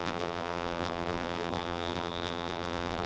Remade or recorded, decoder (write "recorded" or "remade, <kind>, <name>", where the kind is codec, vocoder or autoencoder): remade, vocoder, BigVGAN v2